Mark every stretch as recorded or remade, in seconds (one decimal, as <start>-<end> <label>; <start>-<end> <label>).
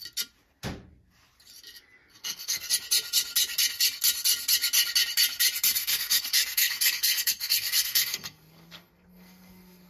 0.0-2.2 recorded; 2.2-2.7 remade; 2.7-5.8 recorded; 5.8-9.9 remade